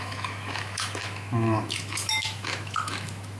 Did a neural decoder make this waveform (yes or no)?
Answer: yes